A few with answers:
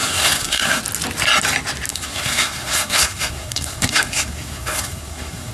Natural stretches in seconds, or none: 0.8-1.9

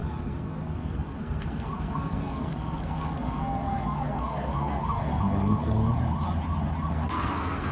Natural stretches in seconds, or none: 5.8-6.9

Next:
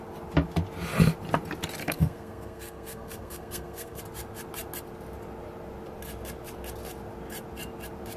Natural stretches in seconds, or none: 0.0-1.8; 4.0-8.2

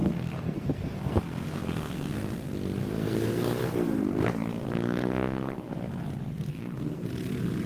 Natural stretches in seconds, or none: 2.1-2.8; 5.7-6.5; 7.1-7.7